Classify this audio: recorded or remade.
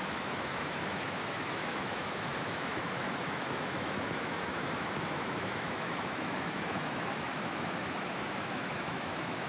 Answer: remade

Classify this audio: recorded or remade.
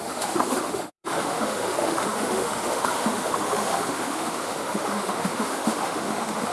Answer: remade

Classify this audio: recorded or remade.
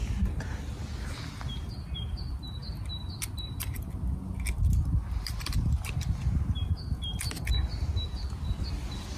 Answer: recorded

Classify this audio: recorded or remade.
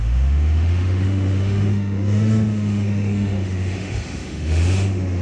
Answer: remade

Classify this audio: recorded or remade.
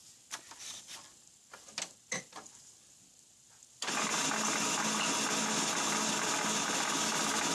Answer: recorded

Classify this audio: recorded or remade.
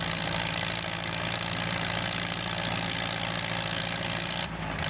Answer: recorded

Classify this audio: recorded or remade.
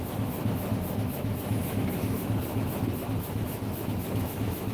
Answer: remade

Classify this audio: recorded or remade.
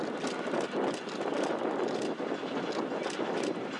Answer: recorded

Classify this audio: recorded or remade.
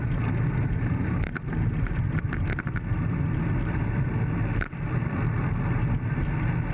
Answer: recorded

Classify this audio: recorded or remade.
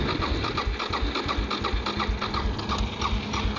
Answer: recorded